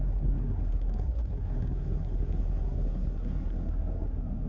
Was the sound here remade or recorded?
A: remade